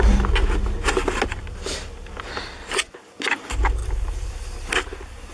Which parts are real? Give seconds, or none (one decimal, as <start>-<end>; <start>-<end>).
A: 0.0-3.8; 4.3-5.3